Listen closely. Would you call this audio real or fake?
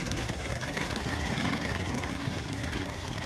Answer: fake